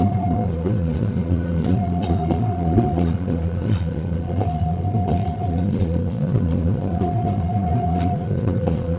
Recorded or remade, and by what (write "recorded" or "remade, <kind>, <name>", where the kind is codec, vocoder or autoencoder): remade, vocoder, Vocos